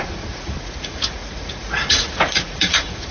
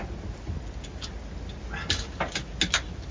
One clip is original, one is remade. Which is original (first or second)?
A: second